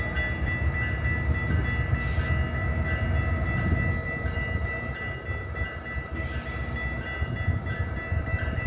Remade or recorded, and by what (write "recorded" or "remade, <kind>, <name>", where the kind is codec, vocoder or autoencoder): recorded